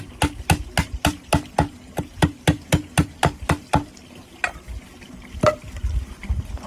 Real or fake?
real